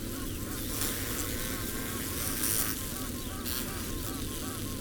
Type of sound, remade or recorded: recorded